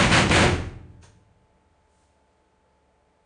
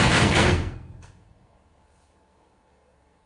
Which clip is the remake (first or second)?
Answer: second